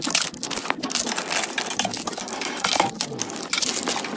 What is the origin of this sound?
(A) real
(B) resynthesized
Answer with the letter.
A